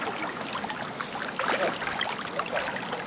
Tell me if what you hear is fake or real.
real